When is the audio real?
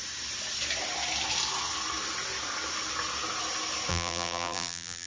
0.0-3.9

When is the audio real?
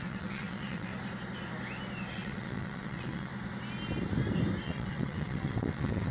0.9-2.1; 3.3-4.6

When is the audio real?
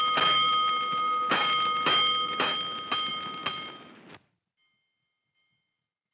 0.0-6.1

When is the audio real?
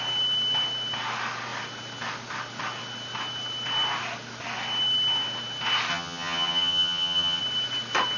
0.0-5.9; 7.4-8.2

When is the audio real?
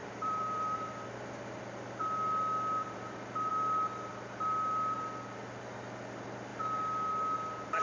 1.6-2.8; 3.5-7.8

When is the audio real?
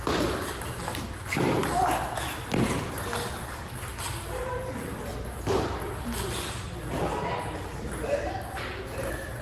0.0-9.4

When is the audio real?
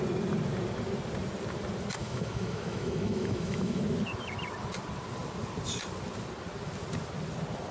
0.0-2.0; 3.8-7.7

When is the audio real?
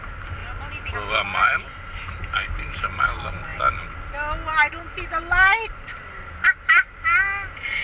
0.0-7.8